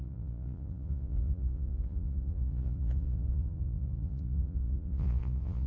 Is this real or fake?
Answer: fake